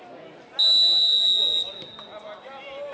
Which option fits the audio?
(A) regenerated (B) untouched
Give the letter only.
B